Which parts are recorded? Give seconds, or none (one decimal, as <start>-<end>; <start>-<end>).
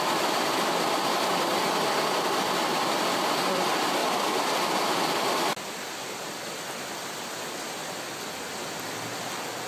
0.0-9.7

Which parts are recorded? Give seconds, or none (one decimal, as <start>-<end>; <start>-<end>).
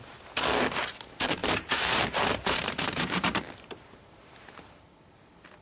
0.0-1.4; 4.8-5.6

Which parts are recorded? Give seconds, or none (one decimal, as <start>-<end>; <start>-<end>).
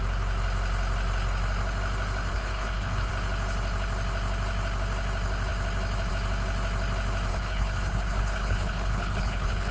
0.0-2.3; 3.1-7.3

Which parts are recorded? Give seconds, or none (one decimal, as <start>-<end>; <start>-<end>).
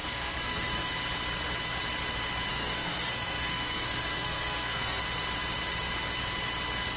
0.9-2.5; 5.0-7.0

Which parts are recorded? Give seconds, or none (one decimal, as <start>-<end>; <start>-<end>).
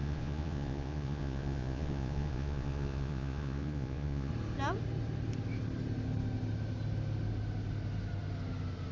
4.3-8.9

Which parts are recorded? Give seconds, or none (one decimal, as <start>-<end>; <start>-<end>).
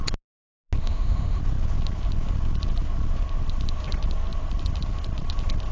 0.0-0.8; 1.4-5.7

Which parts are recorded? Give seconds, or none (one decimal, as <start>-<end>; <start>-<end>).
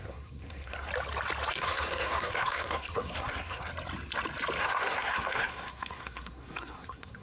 0.9-1.5; 3.7-4.6